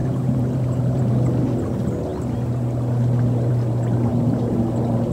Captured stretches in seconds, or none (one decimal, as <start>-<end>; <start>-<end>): 1.1-5.1